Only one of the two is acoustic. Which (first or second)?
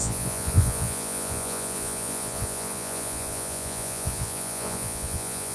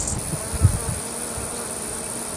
second